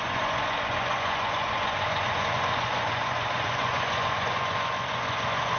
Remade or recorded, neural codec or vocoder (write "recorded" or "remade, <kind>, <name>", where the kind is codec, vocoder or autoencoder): remade, vocoder, Vocos